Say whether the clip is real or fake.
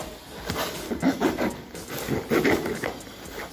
real